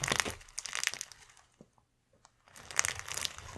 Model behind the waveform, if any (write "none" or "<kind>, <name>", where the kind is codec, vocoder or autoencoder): none